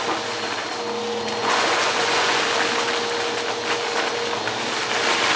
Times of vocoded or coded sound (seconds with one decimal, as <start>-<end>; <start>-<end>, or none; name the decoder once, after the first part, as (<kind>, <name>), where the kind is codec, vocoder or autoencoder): 1.4-2.4 (vocoder, Vocos)